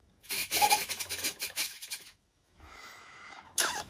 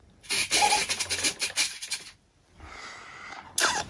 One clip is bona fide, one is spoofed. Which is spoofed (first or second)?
first